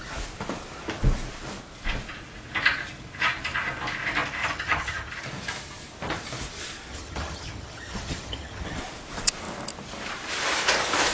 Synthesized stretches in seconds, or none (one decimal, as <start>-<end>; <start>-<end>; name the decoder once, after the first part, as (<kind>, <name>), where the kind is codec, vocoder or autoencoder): 4.4-5.1 (vocoder, HiFi-GAN); 6.9-8.8